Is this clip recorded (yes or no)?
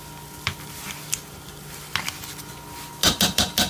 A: yes